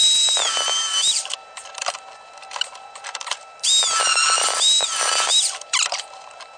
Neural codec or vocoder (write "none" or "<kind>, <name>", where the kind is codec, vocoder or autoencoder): none